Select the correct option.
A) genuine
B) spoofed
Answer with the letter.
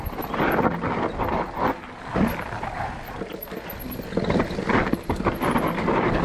A